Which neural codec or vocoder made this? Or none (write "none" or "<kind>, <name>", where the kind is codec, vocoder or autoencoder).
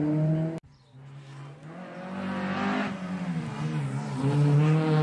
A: none